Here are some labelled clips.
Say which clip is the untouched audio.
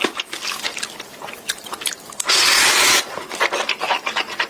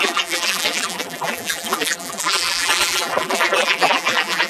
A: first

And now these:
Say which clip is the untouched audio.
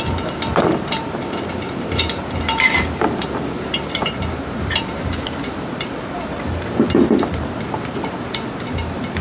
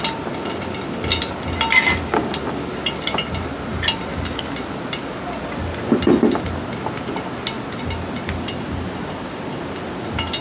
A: second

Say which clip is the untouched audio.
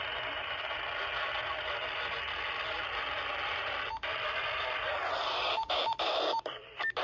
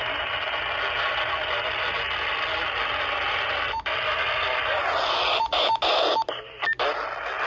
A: second